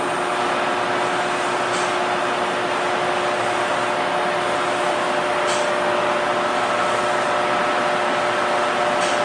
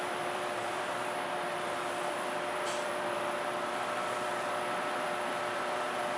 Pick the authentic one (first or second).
first